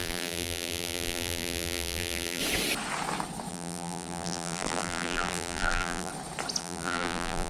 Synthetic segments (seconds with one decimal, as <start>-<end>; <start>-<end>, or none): 0.0-2.4; 3.5-6.1; 6.6-7.5